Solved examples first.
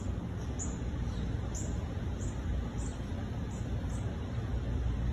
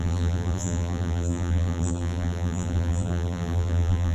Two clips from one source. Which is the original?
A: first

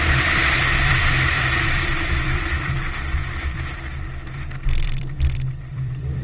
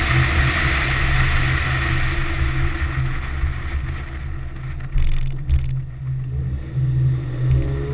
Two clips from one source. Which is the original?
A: second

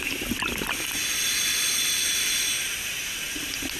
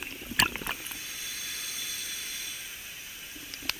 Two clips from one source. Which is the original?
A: first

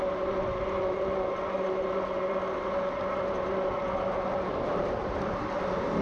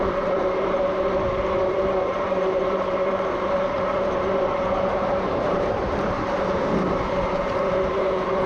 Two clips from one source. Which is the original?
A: first